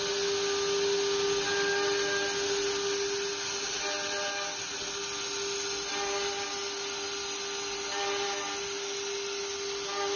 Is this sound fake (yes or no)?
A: no